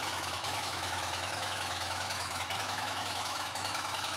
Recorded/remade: remade